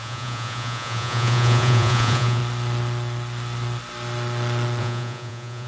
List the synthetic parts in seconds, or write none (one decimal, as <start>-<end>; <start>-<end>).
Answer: 0.0-2.4; 4.8-5.7